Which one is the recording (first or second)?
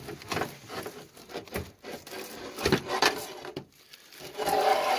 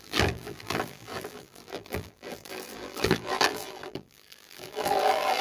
first